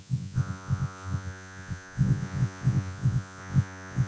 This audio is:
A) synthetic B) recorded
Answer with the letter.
A